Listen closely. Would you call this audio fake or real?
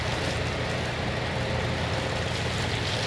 real